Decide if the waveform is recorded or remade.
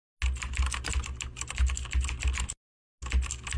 recorded